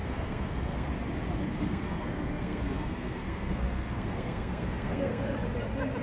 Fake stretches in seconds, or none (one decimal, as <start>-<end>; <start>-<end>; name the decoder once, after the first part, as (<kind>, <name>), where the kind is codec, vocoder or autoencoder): 0.0-0.9 (codec, SNAC); 1.6-5.2